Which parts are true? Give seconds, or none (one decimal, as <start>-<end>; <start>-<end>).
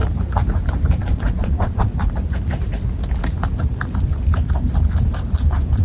0.0-1.0; 1.9-5.8